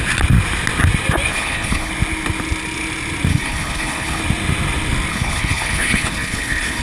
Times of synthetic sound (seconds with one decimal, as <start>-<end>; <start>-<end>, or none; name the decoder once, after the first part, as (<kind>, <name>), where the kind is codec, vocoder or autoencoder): 1.3-1.9 (codec, HILCodec); 3.3-4.2; 5.1-6.8